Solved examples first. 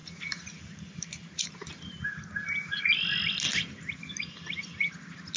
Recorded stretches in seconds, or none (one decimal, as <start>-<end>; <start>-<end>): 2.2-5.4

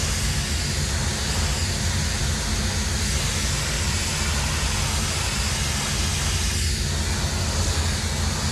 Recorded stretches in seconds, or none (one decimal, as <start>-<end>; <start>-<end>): 0.0-8.5

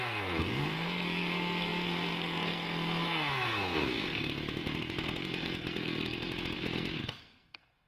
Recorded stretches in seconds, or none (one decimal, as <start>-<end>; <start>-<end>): none

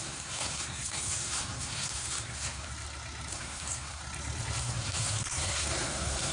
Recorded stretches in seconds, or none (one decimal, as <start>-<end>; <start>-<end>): 2.7-3.3; 4.0-4.6

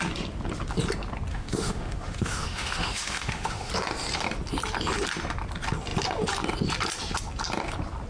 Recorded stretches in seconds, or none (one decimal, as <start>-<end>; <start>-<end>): 0.0-1.3; 3.7-8.1